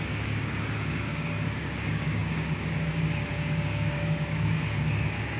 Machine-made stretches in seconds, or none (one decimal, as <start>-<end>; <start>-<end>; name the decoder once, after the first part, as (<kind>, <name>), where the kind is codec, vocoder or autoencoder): 0.0-5.4 (codec, DAC)